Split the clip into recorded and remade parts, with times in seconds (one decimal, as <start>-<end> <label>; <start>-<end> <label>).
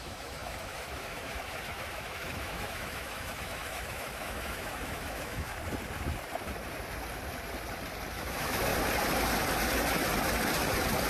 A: 0.0-5.5 remade; 5.5-8.1 recorded; 8.1-8.7 remade; 8.7-11.1 recorded